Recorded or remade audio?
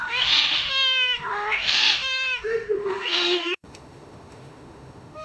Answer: remade